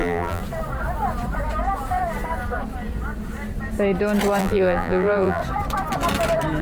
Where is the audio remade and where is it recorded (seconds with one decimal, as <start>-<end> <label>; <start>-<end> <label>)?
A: 0.0-0.4 remade; 0.4-4.4 recorded; 4.4-5.4 remade; 5.4-6.6 recorded